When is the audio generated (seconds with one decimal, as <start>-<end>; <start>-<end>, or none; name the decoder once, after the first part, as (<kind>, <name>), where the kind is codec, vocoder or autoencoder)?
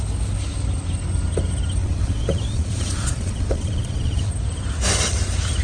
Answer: 1.8-4.3 (vocoder, Vocos)